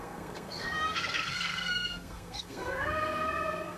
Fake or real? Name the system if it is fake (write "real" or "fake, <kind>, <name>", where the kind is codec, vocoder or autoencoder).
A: fake, codec, SNAC